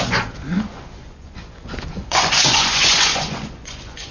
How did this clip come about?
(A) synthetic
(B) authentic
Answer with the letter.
A